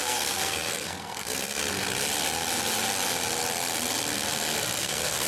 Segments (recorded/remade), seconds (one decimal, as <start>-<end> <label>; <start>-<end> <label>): 0.0-1.6 remade; 1.6-4.8 recorded; 4.8-5.3 remade